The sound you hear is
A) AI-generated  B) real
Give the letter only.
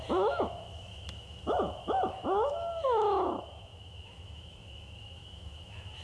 A